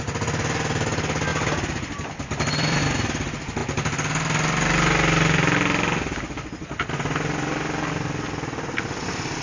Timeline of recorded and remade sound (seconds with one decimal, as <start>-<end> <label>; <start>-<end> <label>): 0.0-9.4 recorded